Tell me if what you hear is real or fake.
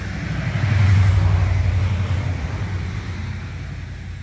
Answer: real